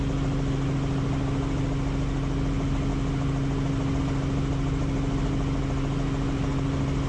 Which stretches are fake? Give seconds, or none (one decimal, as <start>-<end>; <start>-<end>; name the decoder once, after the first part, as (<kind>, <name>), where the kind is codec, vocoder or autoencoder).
none